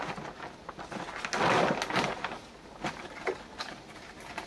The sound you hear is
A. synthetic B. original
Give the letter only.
B